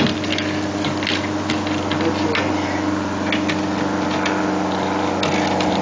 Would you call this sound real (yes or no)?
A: yes